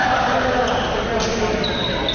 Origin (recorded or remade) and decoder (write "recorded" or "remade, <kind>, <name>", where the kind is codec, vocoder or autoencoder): recorded